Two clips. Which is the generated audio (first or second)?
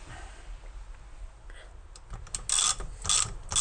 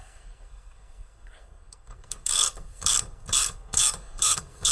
second